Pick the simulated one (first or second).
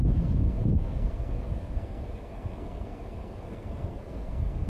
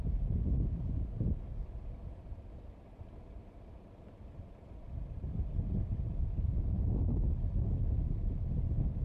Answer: first